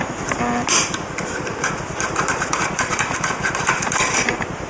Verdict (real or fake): real